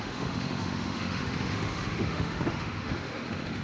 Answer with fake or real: fake